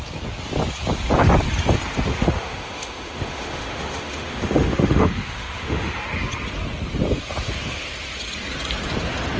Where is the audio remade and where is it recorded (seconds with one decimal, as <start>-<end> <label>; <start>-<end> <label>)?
0.0-2.1 recorded; 2.1-6.0 remade; 6.0-9.4 recorded